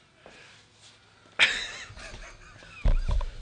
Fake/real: real